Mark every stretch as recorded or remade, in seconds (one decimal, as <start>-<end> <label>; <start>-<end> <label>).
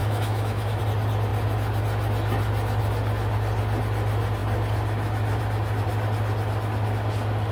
0.0-0.8 remade; 0.8-7.5 recorded